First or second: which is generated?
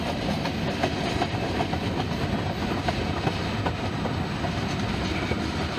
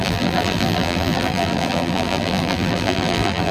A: second